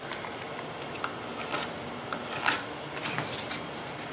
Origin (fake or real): real